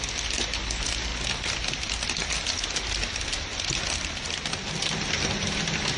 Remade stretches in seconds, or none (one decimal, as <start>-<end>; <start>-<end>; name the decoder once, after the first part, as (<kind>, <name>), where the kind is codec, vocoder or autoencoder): none